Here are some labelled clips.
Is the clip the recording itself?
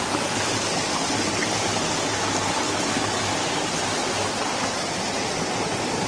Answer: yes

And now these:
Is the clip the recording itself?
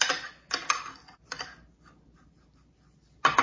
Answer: yes